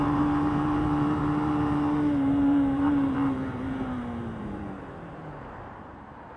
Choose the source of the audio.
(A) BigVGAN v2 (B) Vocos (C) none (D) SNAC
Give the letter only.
A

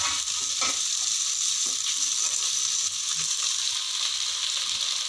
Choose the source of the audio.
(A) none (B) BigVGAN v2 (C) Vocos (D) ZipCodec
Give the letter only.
A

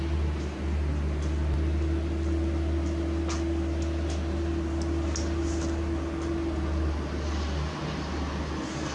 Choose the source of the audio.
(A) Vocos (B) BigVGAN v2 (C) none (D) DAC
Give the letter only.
C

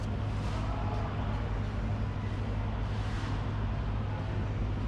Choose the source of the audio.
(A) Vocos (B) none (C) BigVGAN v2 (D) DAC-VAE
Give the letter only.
B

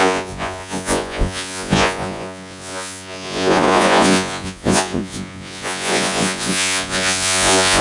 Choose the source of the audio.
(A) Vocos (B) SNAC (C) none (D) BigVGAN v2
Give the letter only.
A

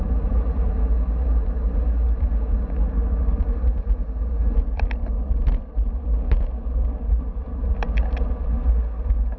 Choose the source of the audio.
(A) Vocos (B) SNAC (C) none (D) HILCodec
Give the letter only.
C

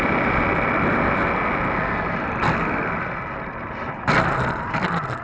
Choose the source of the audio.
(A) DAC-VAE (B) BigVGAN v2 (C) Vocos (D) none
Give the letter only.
D